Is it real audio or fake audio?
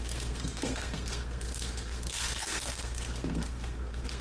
fake